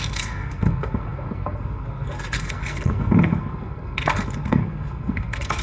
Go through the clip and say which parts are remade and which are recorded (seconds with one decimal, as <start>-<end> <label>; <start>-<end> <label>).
0.0-5.6 remade